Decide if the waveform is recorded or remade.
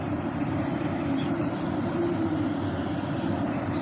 remade